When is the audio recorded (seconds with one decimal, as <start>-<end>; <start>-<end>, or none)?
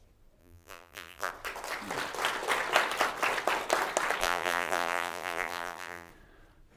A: 0.0-0.4; 1.3-4.2; 6.1-6.8